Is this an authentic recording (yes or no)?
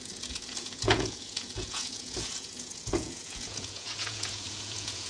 no